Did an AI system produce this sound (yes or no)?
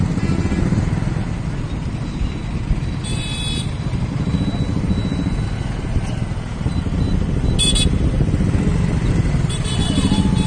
no